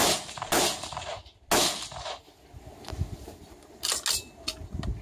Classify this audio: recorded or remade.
recorded